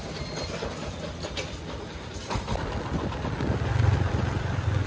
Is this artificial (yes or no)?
no